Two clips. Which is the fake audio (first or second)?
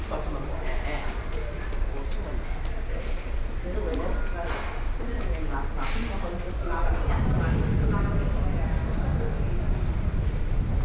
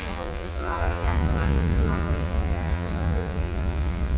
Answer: second